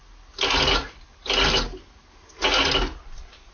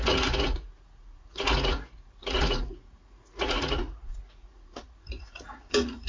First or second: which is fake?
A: second